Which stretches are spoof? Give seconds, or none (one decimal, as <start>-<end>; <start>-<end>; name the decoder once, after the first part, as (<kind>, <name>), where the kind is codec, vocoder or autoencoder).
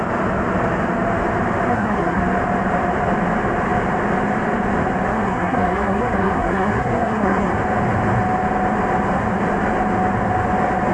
1.7-2.2 (codec, SNAC); 5.1-7.5